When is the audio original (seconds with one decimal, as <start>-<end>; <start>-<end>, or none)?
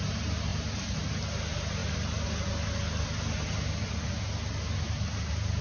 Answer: 0.0-5.6